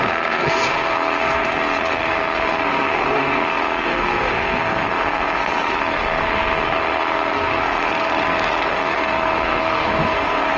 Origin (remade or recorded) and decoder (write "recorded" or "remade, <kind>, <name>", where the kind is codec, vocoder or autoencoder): remade, codec, SNAC